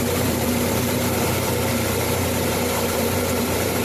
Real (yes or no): no